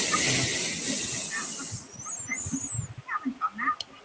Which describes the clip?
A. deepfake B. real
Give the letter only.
B